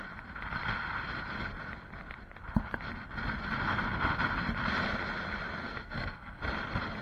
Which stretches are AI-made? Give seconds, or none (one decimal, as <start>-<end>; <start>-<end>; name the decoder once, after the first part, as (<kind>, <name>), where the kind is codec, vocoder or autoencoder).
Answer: 5.7-6.4 (codec, SNAC)